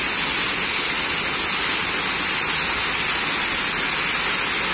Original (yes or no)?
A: yes